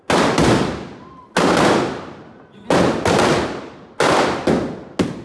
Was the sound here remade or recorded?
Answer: recorded